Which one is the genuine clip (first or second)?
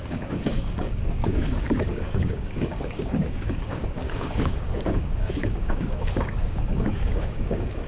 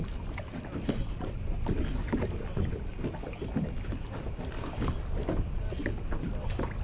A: second